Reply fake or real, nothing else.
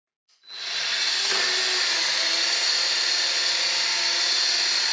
real